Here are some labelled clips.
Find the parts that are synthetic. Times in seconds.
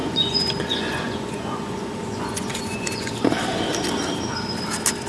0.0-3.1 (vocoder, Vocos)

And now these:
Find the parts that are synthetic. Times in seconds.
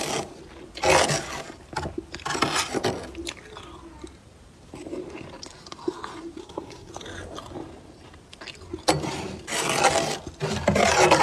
6.4-6.9 (codec, SNAC)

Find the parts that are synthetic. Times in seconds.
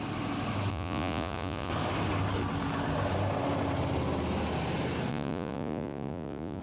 0.7-1.7 (vocoder, Vocos); 5.1-6.6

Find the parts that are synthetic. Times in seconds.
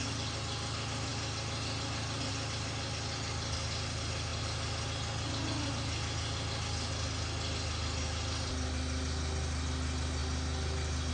none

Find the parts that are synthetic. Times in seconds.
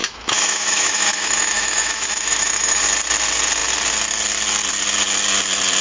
0.0-2.8 (autoencoder, DAC-VAE)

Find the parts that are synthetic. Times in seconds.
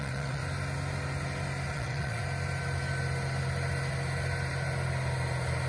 0.0-0.4 (vocoder, WaveNeXt); 1.7-2.2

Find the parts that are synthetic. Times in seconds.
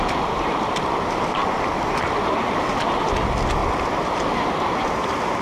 3.6-4.3 (vocoder, BigVGAN v2)